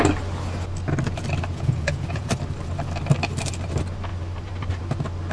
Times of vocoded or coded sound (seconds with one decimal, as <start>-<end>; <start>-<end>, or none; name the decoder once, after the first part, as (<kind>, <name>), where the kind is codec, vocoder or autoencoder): 1.5-2.3 (vocoder, Vocos)